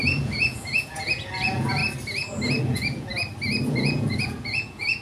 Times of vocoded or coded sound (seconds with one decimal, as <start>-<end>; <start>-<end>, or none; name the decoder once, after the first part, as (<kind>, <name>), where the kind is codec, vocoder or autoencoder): 0.0-1.8 (vocoder, Vocos); 2.6-3.1; 3.7-5.0